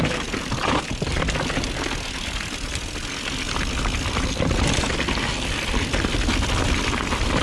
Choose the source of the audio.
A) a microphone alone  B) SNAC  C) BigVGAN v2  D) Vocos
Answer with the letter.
A